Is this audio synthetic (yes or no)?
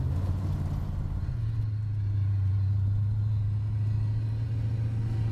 no